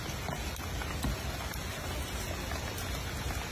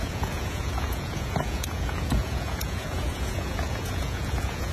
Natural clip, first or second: first